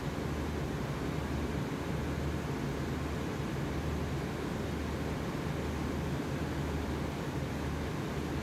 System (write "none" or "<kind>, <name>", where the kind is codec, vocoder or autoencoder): none